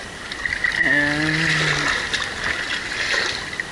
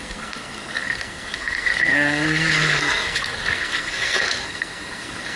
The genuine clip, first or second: first